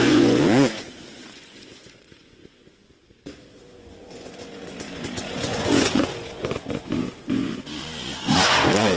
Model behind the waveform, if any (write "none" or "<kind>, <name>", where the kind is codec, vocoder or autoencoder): vocoder, Vocos